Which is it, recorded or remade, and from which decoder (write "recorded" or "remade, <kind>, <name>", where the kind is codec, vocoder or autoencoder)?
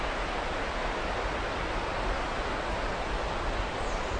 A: recorded